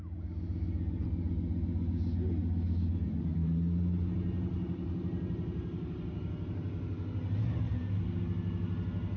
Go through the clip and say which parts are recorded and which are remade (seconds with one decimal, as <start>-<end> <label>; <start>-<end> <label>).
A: 0.0-9.2 recorded